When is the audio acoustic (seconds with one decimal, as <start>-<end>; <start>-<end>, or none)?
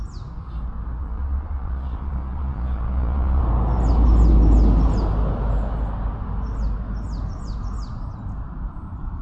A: 0.0-1.0; 3.4-9.2